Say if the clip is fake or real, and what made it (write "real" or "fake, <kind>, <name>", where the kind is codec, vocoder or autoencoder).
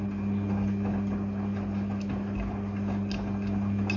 real